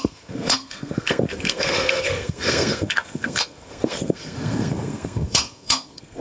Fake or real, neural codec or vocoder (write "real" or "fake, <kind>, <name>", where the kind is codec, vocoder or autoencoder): fake, codec, SNAC